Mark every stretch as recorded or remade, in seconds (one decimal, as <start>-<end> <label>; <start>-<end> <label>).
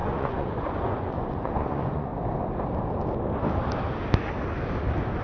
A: 0.0-2.1 remade; 2.1-5.2 recorded